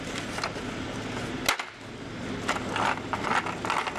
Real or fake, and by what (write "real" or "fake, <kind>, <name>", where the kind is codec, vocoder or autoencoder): real